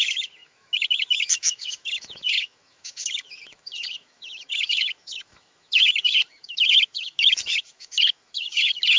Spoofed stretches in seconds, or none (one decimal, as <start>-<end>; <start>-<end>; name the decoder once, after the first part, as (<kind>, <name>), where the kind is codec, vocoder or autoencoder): 0.0-9.0 (autoencoder, DAC-VAE)